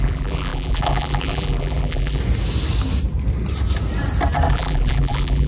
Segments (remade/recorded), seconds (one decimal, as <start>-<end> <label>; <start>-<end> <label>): 0.0-2.2 remade; 2.2-4.5 recorded; 4.5-5.5 remade